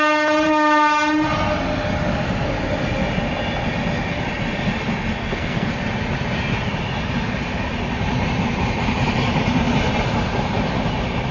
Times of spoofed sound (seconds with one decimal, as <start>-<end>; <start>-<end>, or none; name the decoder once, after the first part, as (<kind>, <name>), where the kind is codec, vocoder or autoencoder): 5.2-5.7 (codec, SNAC)